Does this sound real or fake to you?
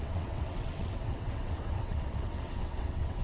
fake